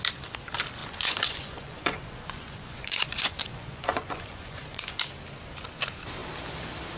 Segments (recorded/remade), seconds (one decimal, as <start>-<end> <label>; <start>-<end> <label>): 0.0-0.8 recorded; 0.8-5.0 remade; 5.0-7.0 recorded